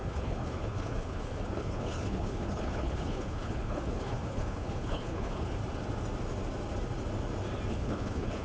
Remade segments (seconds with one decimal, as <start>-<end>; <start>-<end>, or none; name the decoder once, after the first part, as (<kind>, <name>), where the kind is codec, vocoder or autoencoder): 0.0-5.6 (codec, HILCodec); 7.7-8.4